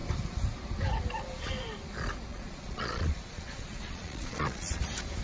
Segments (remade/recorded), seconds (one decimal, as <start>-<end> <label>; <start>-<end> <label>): 0.0-2.3 recorded; 2.3-4.8 remade; 4.8-5.2 recorded